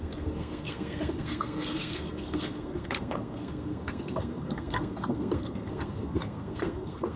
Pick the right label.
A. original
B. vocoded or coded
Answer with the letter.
B